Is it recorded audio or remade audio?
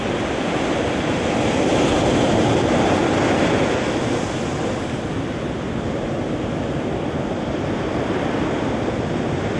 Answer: recorded